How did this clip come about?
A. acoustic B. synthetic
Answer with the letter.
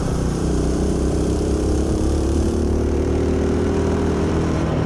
B